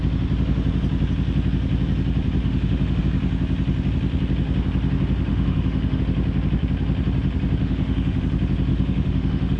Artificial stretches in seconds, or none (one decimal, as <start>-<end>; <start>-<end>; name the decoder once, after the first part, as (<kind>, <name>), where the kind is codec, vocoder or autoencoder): 2.4-3.0 (autoencoder, DAC-VAE); 5.3-6.0; 7.6-8.2; 8.7-9.6